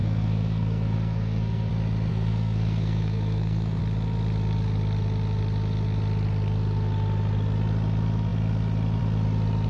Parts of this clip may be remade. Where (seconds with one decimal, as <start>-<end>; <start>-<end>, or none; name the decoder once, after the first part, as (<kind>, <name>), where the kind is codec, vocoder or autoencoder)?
0.0-1.7 (codec, SNAC); 2.1-3.8